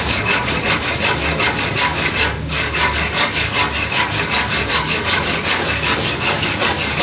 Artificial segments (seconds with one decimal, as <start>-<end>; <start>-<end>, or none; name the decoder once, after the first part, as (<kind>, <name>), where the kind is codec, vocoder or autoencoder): 0.0-7.0 (codec, DAC)